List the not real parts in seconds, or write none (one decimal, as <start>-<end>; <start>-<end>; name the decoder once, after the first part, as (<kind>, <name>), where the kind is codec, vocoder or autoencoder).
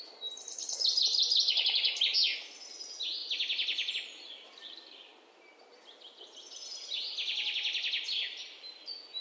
none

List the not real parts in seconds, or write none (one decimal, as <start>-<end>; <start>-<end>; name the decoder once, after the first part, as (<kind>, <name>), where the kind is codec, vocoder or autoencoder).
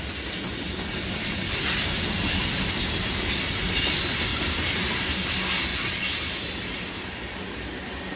4.3-4.8 (vocoder, BigVGAN v2); 5.7-6.3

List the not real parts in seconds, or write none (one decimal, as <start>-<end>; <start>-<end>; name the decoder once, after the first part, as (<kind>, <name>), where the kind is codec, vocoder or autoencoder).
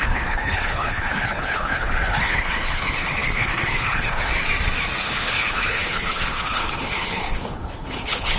0.0-4.4 (codec, HILCodec); 5.0-8.4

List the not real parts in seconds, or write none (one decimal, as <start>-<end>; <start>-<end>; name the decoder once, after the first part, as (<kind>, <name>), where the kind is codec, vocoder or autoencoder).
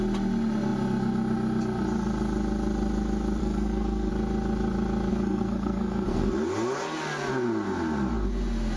3.4-4.1 (codec, SNAC); 5.1-6.3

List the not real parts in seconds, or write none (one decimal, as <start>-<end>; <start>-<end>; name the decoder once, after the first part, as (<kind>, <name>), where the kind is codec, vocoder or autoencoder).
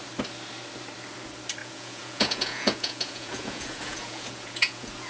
1.6-5.1 (vocoder, Vocos)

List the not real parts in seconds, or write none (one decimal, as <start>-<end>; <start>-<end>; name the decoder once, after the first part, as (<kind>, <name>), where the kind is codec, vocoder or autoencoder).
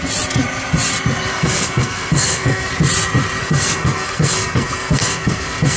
1.3-2.7 (codec, SNAC); 3.4-5.8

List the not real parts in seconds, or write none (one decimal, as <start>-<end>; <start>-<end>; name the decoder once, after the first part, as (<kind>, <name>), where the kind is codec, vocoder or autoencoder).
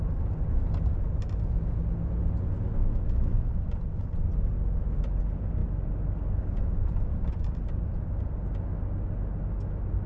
none